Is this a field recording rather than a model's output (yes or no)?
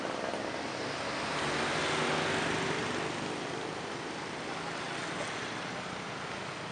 yes